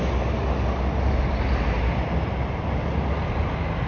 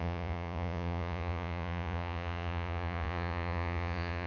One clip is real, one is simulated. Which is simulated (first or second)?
second